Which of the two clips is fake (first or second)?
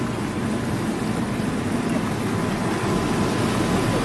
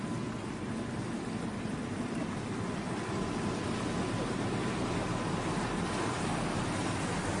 second